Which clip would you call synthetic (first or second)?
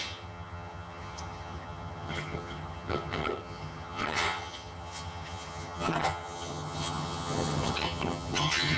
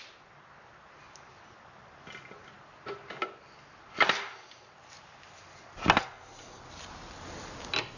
first